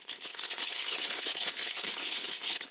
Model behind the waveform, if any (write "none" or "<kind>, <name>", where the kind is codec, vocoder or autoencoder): codec, HILCodec